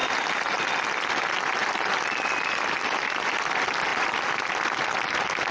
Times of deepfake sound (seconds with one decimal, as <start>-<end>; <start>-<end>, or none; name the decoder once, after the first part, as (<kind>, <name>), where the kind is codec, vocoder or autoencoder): none